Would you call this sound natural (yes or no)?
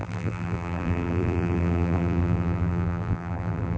no